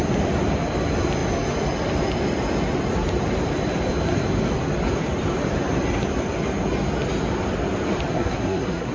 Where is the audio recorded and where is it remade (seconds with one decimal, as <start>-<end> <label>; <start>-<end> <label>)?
0.0-8.1 recorded; 8.1-8.9 remade